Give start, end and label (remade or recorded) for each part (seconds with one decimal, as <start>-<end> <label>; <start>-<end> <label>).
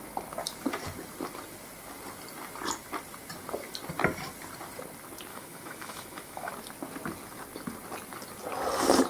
0.0-5.3 recorded; 5.3-6.5 remade; 6.5-9.1 recorded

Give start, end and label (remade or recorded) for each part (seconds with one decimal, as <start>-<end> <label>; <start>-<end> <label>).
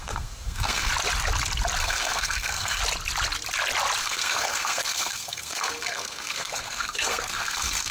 0.0-0.9 remade; 0.9-1.8 recorded; 1.8-2.8 remade; 2.8-4.0 recorded; 4.0-7.9 remade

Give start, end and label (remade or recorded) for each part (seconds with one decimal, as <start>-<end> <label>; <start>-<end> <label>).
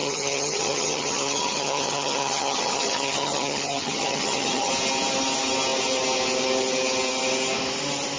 0.0-4.7 remade; 4.7-8.2 recorded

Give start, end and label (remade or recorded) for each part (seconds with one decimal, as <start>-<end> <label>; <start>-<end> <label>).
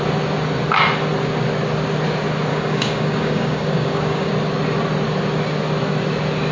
0.0-2.5 recorded; 2.5-4.3 remade; 4.3-6.5 recorded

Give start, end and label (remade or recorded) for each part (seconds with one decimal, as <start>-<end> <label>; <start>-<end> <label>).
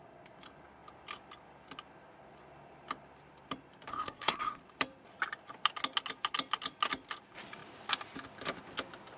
0.0-3.9 recorded; 3.9-4.6 remade; 4.6-9.2 recorded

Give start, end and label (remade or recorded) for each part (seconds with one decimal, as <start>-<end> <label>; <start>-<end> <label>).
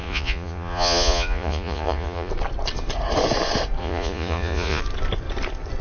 0.0-2.3 remade; 2.3-3.8 recorded; 3.8-4.8 remade; 4.8-5.8 recorded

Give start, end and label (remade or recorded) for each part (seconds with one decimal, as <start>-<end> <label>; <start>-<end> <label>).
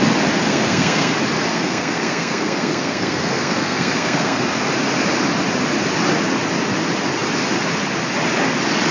0.0-0.5 recorded; 0.5-1.1 remade; 1.1-1.5 recorded; 1.5-4.4 remade; 4.4-8.9 recorded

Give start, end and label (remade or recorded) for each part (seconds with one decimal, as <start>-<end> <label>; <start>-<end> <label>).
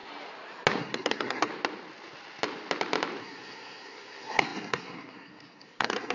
0.0-0.8 recorded; 0.8-1.5 remade; 1.5-3.2 recorded; 3.2-6.1 remade